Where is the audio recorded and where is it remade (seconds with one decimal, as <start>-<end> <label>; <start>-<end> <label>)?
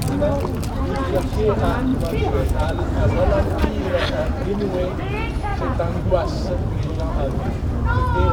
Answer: 0.0-1.9 recorded; 1.9-5.0 remade; 5.0-5.5 recorded; 5.5-6.5 remade; 6.5-8.3 recorded